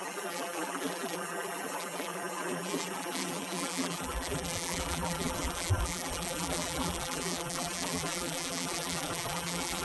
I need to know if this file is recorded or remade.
remade